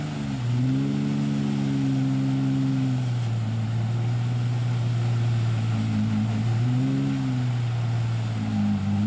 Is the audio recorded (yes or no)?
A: yes